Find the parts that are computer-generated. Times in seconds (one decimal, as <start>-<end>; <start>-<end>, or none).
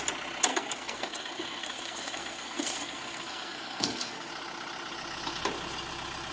0.5-4.3